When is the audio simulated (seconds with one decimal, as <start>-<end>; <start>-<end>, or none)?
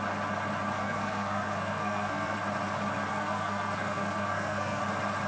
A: 0.8-2.4; 3.1-4.8